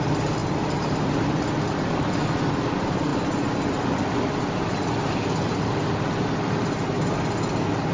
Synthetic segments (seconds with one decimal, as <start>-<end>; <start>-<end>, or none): none